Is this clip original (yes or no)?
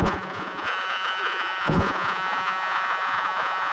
no